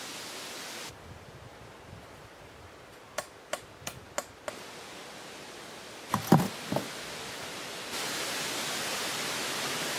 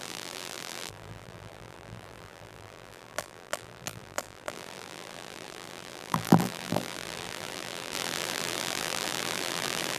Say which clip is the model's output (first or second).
second